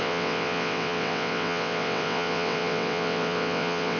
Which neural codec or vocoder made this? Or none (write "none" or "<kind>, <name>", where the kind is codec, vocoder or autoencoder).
vocoder, WaveNeXt